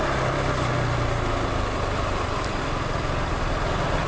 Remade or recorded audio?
recorded